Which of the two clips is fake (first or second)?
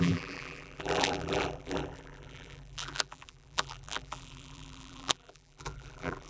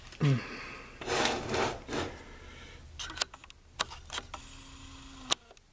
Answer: first